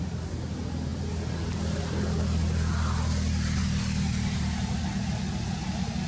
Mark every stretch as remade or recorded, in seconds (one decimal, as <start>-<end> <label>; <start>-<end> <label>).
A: 0.0-6.1 recorded